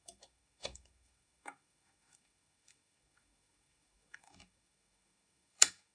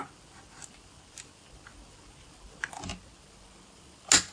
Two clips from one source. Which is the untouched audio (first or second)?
second